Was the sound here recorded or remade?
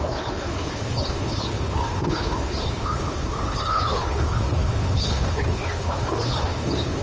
remade